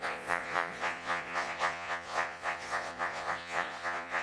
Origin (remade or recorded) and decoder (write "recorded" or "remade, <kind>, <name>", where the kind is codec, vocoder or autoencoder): remade, vocoder, Vocos